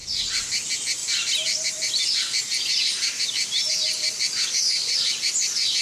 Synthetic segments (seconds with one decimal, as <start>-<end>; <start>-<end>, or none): none

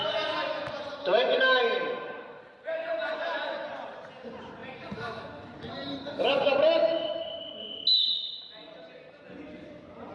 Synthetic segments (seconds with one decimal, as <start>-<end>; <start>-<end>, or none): 0.8-3.7; 4.6-7.4

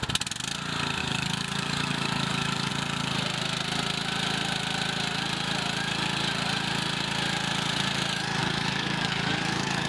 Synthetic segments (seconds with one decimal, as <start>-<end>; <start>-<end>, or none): 1.0-2.7; 8.4-9.9